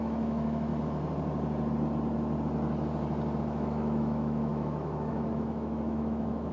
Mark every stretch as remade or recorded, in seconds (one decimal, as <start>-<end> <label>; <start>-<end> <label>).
0.0-0.7 remade; 0.7-3.4 recorded; 3.4-6.5 remade